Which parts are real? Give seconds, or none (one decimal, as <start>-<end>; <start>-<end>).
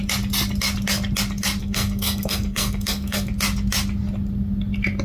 0.0-1.6; 3.3-5.0